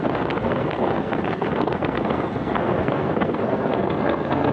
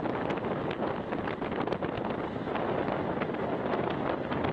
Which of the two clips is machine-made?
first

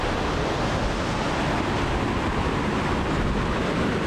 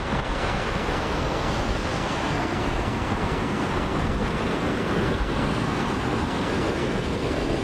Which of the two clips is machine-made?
second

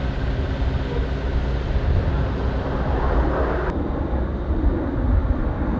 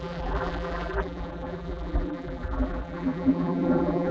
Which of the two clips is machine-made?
second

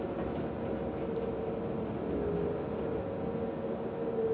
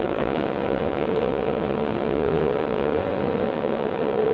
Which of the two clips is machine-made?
second